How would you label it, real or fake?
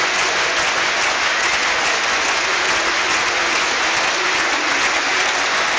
fake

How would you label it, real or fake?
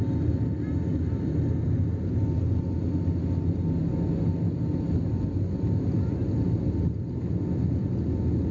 real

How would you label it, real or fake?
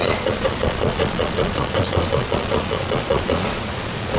fake